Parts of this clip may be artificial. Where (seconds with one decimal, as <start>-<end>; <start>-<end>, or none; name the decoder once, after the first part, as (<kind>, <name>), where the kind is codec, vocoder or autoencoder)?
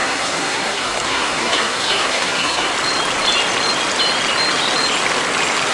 0.0-2.7 (codec, SNAC)